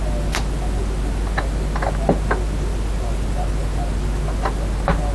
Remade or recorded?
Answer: recorded